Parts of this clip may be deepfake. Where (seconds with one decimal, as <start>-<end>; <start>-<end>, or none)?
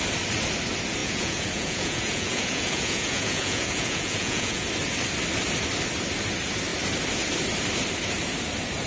1.0-4.7